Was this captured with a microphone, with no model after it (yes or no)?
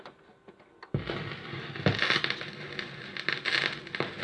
yes